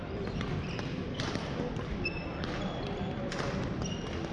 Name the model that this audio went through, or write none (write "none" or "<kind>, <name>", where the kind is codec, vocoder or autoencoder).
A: none